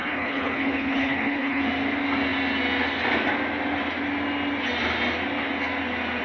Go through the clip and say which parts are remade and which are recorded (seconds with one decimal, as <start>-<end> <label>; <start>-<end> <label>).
0.0-1.6 remade; 1.6-6.2 recorded